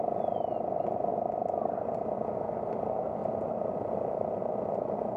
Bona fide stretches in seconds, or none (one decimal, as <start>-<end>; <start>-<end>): 0.0-3.2; 4.4-5.2